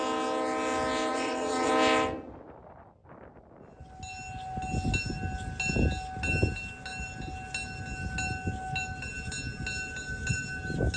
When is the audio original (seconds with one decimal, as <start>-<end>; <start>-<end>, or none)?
0.0-1.1; 1.7-11.0

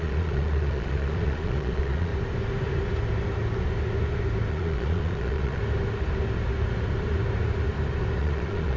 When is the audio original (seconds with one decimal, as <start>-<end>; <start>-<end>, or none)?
2.1-4.5; 5.6-8.2